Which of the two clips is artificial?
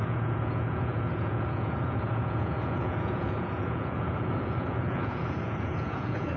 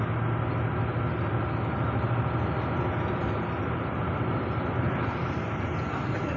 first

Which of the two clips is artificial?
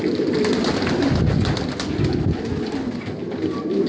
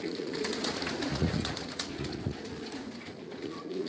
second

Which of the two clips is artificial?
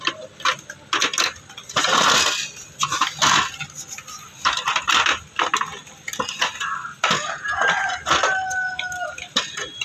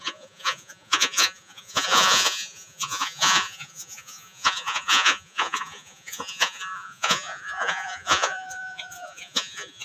second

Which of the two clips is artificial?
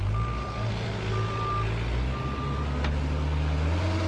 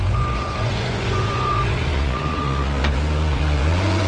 second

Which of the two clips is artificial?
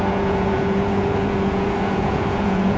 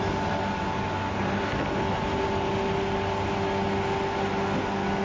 first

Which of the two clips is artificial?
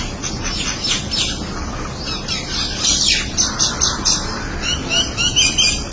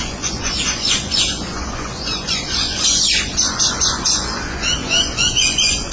second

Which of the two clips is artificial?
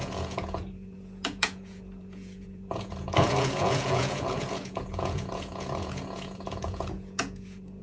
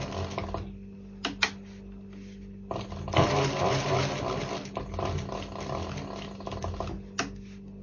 first